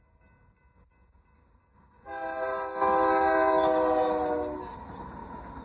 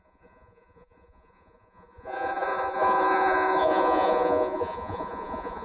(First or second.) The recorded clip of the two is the first